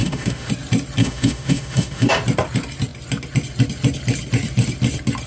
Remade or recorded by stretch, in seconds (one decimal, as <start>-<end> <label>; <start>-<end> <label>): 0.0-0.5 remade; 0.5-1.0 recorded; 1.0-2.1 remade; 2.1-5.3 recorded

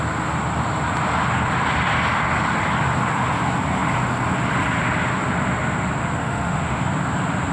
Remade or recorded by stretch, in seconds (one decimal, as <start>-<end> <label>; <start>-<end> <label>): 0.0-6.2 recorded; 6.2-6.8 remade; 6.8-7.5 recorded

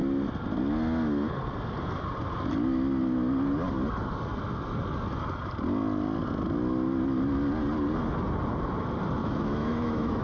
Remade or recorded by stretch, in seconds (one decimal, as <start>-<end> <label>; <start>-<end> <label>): 0.0-9.2 recorded; 9.2-10.2 remade

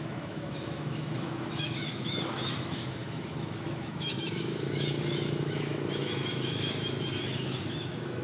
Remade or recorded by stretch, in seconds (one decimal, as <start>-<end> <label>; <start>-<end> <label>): 0.0-8.2 remade

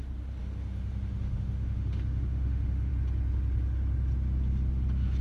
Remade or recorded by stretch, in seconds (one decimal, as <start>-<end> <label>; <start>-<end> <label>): 0.0-0.4 recorded; 0.4-2.9 remade; 2.9-5.2 recorded